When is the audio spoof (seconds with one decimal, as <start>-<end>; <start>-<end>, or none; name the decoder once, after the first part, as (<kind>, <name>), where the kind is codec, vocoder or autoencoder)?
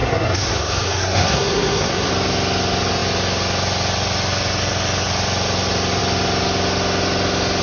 0.0-2.1 (codec, SNAC)